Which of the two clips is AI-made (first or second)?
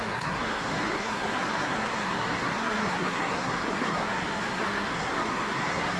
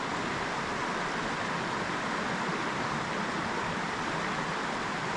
first